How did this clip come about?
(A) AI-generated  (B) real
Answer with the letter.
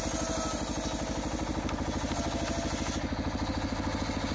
B